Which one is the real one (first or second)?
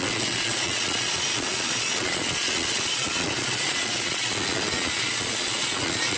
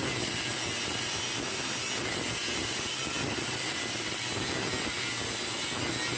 second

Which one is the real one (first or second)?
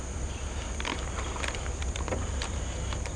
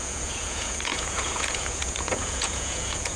first